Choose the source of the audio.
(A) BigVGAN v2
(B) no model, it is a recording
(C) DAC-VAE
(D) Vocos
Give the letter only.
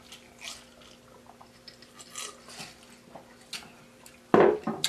B